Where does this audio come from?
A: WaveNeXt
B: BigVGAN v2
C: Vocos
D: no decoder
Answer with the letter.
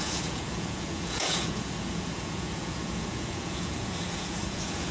C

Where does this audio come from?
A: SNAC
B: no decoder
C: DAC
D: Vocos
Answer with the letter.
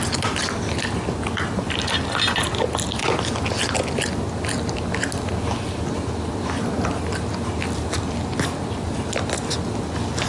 B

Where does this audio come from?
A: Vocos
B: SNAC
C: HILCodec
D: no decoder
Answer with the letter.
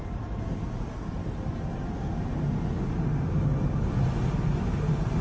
D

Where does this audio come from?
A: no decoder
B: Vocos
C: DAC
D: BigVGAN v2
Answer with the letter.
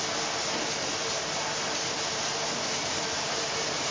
A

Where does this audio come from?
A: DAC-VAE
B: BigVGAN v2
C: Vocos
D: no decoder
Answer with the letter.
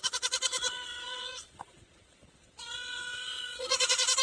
C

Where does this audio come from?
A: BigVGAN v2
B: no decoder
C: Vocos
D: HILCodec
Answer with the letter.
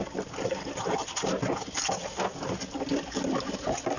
B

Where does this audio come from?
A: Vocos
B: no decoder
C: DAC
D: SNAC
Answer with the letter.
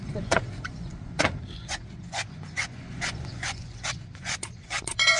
A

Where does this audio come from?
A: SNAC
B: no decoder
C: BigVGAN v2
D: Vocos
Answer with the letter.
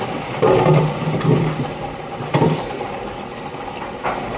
B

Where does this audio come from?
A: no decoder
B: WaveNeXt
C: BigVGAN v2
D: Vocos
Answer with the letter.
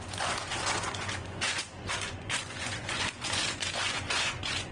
D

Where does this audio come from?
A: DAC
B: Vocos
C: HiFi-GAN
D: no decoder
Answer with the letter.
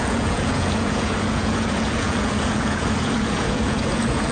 B